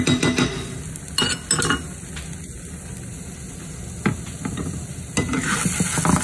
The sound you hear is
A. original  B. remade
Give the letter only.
A